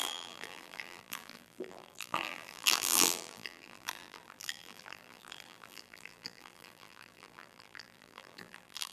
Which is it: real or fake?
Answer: fake